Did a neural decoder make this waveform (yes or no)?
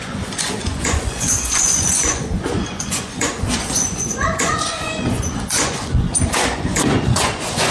yes